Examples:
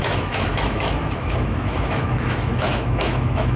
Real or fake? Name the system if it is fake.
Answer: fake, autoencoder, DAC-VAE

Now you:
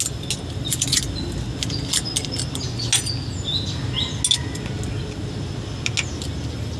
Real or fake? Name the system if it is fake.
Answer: real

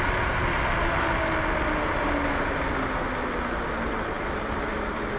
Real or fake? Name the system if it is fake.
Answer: real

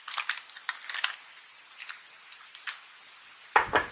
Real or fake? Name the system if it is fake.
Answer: real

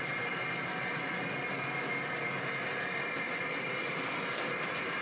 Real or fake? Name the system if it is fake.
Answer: real